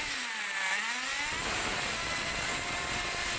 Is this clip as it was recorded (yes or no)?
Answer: yes